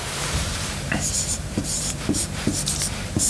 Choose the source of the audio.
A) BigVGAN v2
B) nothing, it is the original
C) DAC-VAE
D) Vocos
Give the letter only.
A